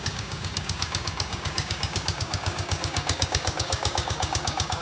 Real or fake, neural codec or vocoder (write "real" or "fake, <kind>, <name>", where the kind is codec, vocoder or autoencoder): fake, codec, DAC